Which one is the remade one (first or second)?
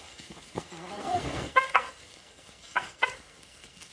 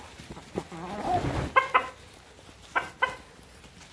first